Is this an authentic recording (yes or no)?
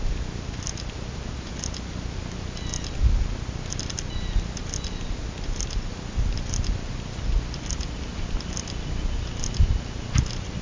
yes